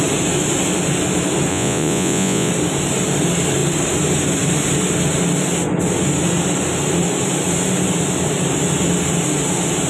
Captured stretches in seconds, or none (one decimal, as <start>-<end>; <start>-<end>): 0.0-1.5; 2.5-9.9